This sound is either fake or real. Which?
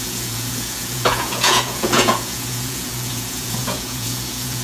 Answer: fake